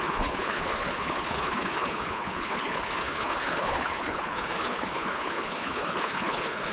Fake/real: fake